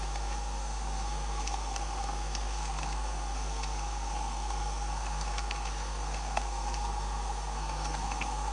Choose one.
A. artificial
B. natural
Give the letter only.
A